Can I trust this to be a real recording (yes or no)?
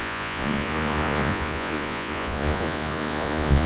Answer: no